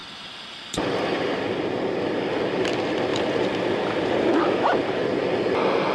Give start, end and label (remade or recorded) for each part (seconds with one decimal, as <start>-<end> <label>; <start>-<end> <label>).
0.0-1.1 remade; 1.1-3.1 recorded; 3.1-4.4 remade; 4.4-5.9 recorded